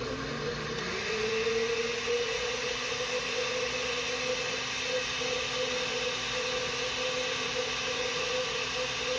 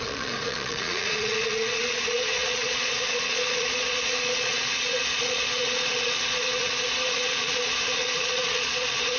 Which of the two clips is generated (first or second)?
second